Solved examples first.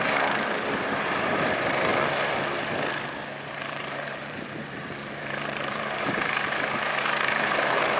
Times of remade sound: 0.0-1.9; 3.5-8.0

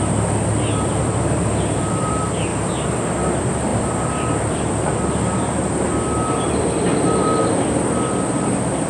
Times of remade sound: 0.0-2.5; 3.1-8.9